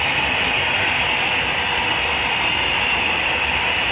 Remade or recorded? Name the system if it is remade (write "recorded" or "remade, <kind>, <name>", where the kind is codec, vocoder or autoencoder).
recorded